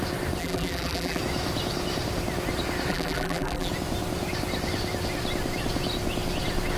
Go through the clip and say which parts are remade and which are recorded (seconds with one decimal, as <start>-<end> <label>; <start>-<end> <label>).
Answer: 0.0-0.4 recorded; 0.4-1.2 remade; 1.2-2.9 recorded; 2.9-3.7 remade; 3.7-6.8 recorded